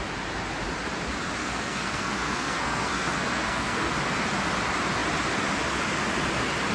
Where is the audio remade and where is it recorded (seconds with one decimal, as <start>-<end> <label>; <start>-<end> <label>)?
0.0-1.4 recorded; 1.4-3.9 remade; 3.9-6.7 recorded